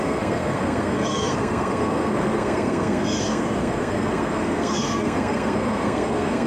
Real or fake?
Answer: fake